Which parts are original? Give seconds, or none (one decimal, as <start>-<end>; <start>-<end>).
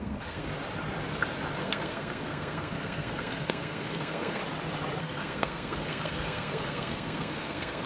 0.5-1.6; 4.4-5.0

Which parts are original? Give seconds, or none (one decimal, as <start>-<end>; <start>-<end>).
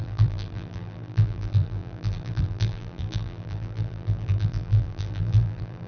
none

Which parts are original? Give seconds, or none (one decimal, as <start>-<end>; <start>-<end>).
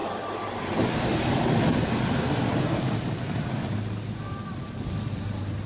0.0-2.6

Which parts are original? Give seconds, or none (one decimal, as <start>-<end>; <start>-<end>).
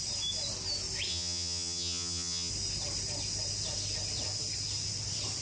0.0-1.1; 2.5-5.4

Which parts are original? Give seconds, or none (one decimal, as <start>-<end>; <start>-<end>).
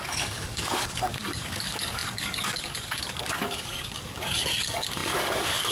none